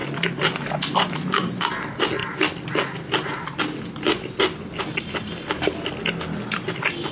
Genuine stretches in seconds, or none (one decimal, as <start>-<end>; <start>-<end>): 0.0-7.1